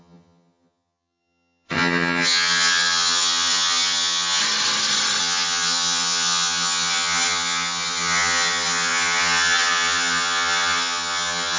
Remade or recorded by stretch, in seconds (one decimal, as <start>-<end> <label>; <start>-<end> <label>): 0.0-4.4 remade; 4.4-5.2 recorded; 5.2-11.6 remade